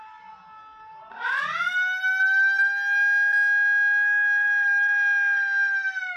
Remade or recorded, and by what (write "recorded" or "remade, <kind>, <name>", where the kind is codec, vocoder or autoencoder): recorded